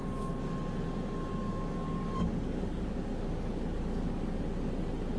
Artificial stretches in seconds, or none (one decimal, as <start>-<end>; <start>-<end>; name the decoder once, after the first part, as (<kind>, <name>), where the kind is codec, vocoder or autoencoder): 0.0-0.5 (codec, DAC); 1.3-4.4